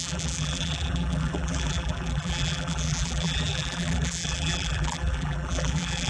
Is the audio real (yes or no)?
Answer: no